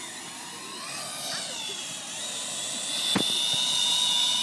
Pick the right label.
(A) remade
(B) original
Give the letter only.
B